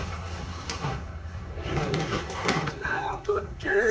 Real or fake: fake